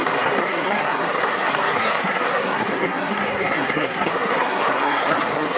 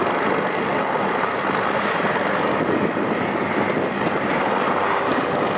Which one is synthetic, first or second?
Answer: first